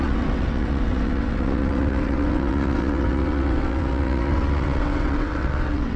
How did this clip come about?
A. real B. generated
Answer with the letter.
B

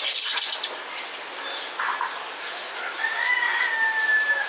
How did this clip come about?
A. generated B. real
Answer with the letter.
B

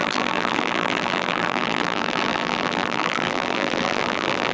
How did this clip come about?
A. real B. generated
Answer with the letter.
B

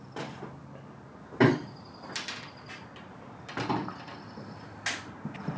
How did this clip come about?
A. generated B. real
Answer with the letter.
B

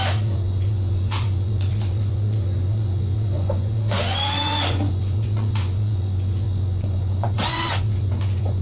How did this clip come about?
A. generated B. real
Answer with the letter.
A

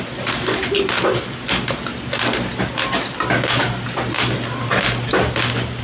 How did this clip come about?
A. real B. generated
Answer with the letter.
A